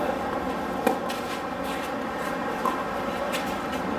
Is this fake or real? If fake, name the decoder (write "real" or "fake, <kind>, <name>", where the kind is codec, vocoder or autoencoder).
real